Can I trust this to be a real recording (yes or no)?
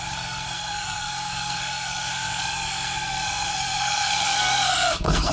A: no